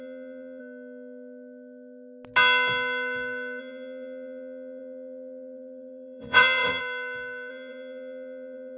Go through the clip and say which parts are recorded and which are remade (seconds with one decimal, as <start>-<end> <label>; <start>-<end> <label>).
0.0-0.6 remade; 0.6-3.6 recorded; 3.6-6.8 remade; 6.8-7.5 recorded; 7.5-8.8 remade